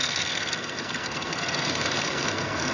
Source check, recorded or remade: remade